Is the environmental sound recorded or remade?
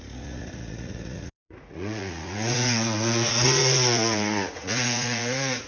remade